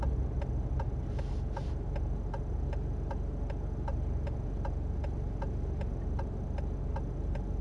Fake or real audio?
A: real